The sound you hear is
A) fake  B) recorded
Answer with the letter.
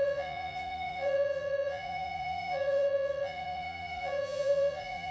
A